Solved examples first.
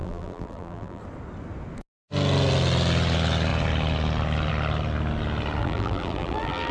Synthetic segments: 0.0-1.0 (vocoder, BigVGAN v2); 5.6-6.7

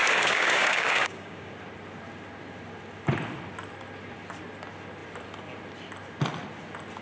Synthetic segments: 0.0-1.5 (codec, DAC)

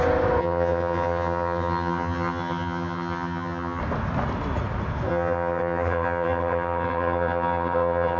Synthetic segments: 0.4-3.8 (vocoder, HiFi-GAN); 5.1-8.2